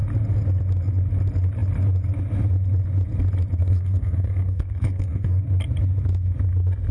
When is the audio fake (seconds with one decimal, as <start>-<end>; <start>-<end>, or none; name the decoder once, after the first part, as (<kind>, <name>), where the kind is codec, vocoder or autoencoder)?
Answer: 3.6-5.4 (codec, SNAC)